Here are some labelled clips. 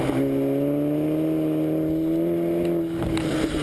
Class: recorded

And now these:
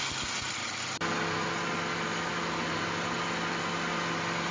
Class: recorded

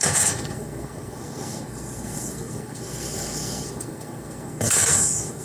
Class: remade